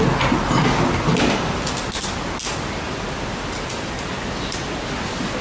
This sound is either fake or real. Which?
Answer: real